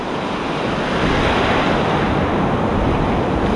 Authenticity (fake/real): real